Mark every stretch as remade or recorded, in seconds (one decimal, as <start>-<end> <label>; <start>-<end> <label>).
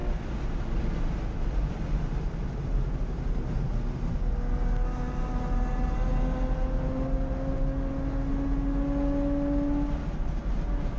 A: 0.0-11.0 recorded